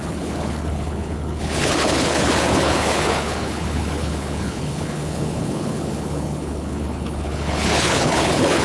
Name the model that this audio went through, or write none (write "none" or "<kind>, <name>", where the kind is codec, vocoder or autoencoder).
codec, HILCodec